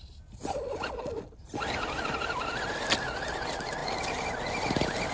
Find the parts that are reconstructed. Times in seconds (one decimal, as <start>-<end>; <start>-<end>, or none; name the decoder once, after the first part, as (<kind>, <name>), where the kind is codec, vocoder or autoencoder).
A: none